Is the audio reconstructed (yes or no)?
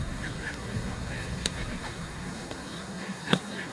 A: yes